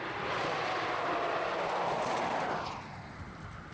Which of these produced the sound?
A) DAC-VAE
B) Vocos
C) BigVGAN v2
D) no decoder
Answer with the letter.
D